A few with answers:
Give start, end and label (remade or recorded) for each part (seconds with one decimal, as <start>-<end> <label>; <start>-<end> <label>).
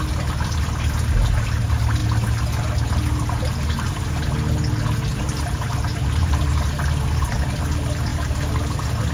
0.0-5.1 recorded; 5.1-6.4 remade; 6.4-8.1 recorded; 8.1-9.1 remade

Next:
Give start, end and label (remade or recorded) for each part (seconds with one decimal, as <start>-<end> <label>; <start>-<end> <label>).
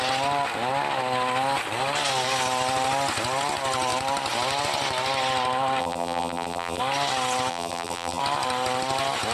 0.0-5.8 recorded; 5.8-6.8 remade; 6.8-7.5 recorded; 7.5-8.2 remade; 8.2-9.3 recorded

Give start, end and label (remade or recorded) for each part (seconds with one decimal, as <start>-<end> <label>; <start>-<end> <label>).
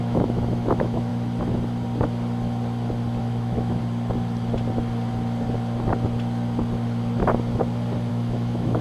0.0-1.1 remade; 1.1-3.2 recorded; 3.2-3.8 remade; 3.8-8.1 recorded; 8.1-8.8 remade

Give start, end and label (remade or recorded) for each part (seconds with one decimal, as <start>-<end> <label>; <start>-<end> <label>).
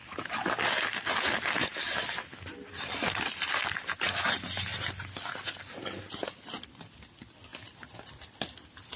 0.0-9.0 recorded